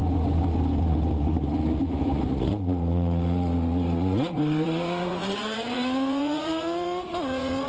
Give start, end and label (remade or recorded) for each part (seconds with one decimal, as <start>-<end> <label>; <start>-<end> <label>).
0.0-0.8 recorded; 0.8-7.7 remade